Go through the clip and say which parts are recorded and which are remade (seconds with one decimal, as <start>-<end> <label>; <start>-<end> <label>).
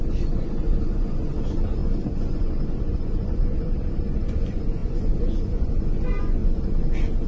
0.0-7.3 remade